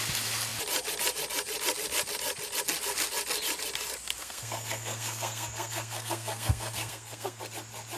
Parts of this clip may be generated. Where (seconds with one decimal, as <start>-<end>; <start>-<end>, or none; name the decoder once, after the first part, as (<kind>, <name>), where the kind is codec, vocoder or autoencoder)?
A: 4.2-7.4 (codec, SNAC)